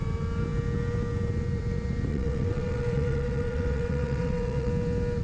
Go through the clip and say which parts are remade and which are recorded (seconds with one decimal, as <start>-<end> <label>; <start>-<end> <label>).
0.0-2.1 recorded; 2.1-4.7 remade; 4.7-5.2 recorded